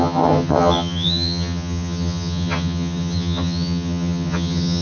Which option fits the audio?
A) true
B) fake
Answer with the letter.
B